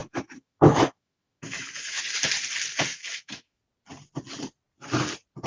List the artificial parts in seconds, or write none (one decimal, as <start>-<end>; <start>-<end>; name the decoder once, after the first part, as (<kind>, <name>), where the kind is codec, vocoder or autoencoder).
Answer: 0.0-2.0 (autoencoder, DAC-VAE); 2.9-3.6